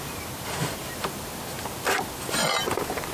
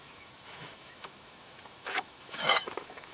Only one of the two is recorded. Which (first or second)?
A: first